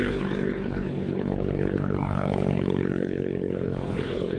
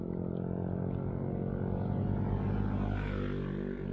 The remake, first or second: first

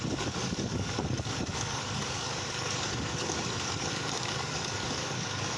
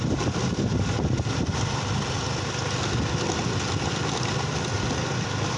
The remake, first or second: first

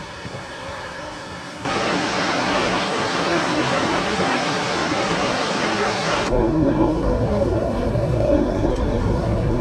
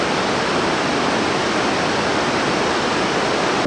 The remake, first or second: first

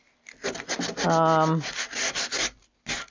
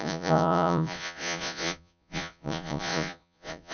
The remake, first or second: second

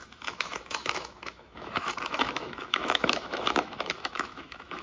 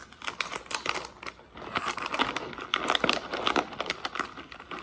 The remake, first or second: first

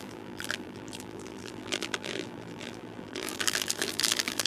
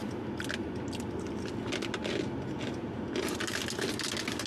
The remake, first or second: first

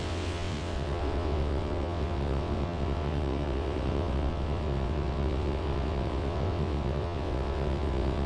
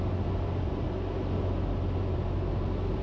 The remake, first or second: first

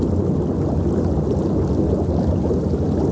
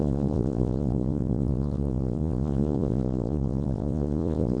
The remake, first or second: second